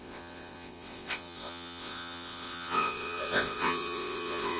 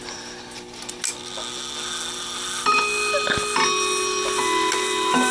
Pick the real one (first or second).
second